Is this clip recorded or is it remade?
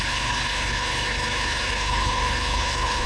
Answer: remade